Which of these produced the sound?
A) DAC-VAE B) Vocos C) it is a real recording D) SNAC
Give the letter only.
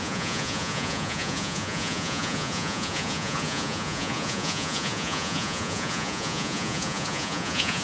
B